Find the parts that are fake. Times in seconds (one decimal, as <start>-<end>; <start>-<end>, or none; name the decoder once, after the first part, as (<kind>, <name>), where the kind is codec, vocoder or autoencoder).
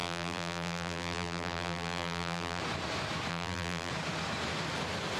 0.0-2.6 (vocoder, BigVGAN v2); 3.3-3.9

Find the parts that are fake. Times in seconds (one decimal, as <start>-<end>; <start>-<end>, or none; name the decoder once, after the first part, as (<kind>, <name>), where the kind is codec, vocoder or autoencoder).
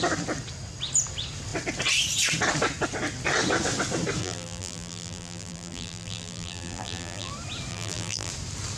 4.2-7.3 (vocoder, BigVGAN v2); 7.7-8.3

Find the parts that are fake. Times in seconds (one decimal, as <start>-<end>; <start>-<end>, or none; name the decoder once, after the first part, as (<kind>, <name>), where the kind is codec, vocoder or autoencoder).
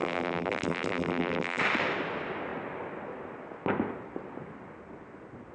0.0-1.6 (vocoder, BigVGAN v2)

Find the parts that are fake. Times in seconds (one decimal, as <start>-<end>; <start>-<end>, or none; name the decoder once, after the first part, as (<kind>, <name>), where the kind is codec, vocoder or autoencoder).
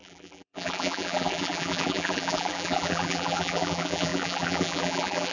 0.0-5.3 (vocoder, BigVGAN v2)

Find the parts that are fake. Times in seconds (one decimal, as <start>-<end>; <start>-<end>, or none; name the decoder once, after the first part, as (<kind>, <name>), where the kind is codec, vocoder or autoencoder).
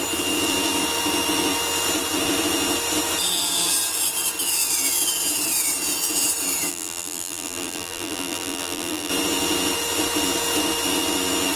6.7-9.1 (vocoder, BigVGAN v2)